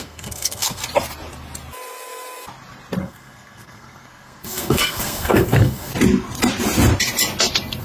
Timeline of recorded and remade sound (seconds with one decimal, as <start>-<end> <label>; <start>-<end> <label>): 0.0-0.8 remade; 0.8-3.0 recorded; 3.0-5.9 remade; 5.9-7.8 recorded